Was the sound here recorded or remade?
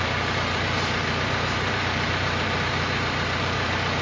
remade